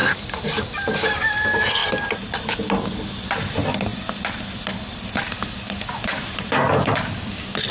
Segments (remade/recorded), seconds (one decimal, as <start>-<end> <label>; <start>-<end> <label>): 0.0-1.2 remade; 1.2-6.1 recorded; 6.1-6.7 remade; 6.7-7.7 recorded